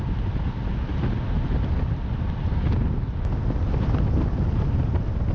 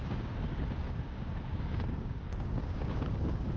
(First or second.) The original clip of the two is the first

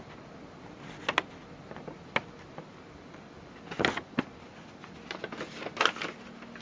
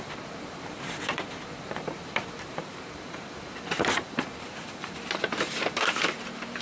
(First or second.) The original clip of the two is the first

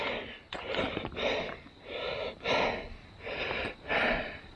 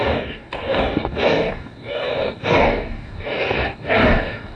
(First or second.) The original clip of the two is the first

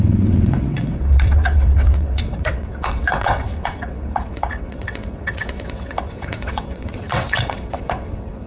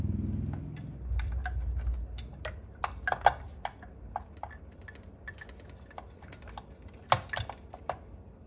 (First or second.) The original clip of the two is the second